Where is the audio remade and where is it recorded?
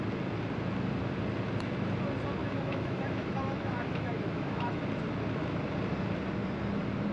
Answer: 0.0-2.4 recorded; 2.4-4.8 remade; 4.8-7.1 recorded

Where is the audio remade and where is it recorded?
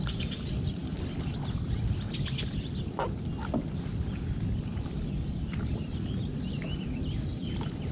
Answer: 0.0-7.9 recorded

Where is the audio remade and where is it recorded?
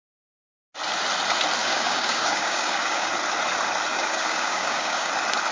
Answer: 0.0-1.6 recorded; 1.6-3.1 remade; 3.1-3.9 recorded; 3.9-5.1 remade; 5.1-5.5 recorded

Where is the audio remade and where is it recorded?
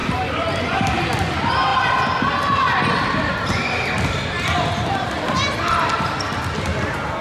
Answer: 0.0-7.2 recorded